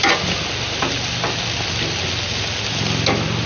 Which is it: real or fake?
real